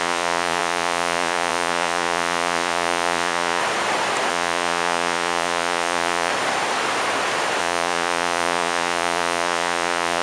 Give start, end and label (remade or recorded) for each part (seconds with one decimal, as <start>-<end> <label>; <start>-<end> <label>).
0.0-3.6 remade; 3.6-4.3 recorded; 4.3-6.3 remade; 6.3-7.6 recorded; 7.6-10.2 remade